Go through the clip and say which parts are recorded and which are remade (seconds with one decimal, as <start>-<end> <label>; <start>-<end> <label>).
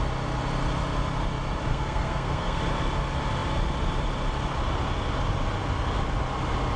0.0-1.7 recorded; 1.7-2.6 remade; 2.6-6.8 recorded